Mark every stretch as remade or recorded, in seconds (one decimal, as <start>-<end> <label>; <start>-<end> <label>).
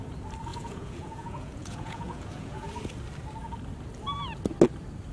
0.0-0.5 recorded; 0.5-2.7 remade; 2.7-5.1 recorded